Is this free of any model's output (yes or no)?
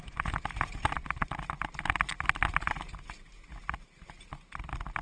yes